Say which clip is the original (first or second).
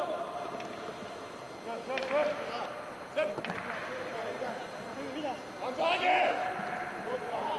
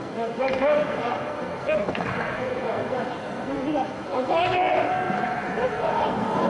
first